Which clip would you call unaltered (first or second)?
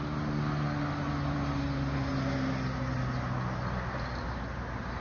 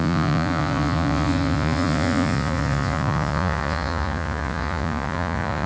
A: first